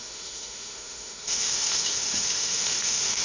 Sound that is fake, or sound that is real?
fake